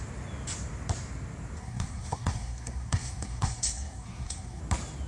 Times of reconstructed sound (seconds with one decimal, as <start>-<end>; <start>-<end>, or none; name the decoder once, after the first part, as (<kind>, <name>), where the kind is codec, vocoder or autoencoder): 1.6-4.6 (codec, SNAC)